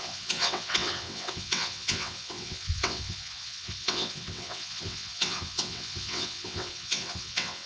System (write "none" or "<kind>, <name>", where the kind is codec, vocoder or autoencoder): vocoder, WaveNeXt